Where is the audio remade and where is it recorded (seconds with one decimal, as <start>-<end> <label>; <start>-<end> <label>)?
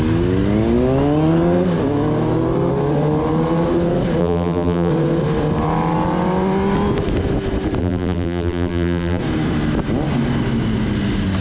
0.0-4.2 recorded; 4.2-4.9 remade; 4.9-7.8 recorded; 7.8-9.2 remade; 9.2-11.4 recorded